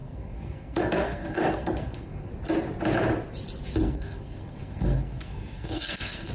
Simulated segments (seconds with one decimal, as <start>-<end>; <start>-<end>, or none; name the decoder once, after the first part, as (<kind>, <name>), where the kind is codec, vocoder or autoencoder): 0.0-2.3 (codec, SNAC); 3.8-6.3